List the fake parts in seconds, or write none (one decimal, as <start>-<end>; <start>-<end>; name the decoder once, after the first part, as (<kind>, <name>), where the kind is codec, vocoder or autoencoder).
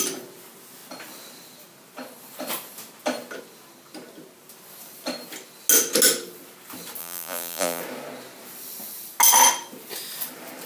7.0-7.8 (vocoder, BigVGAN v2)